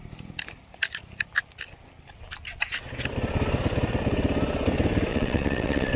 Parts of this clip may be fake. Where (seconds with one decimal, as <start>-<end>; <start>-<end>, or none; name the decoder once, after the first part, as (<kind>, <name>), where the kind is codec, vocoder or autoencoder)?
5.1-6.0 (vocoder, WaveNeXt)